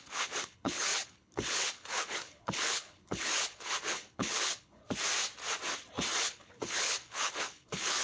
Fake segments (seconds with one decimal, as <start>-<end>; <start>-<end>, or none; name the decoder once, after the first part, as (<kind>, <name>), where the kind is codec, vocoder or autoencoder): 0.0-4.8 (codec, HILCodec); 6.2-8.0